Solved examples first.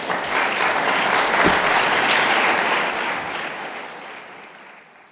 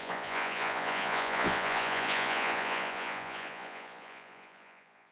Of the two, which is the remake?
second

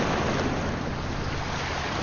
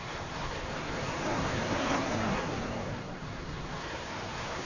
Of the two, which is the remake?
second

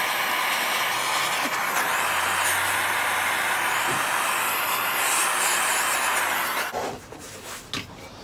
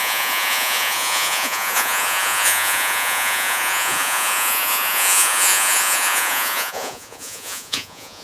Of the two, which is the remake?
second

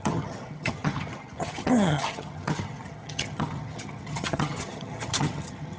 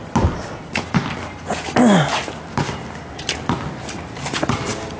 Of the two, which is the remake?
first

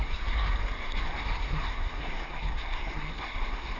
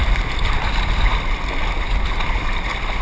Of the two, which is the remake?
first